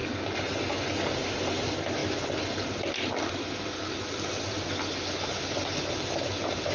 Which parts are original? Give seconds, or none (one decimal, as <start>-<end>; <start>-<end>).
0.0-6.7